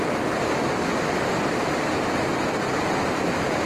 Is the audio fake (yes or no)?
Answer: no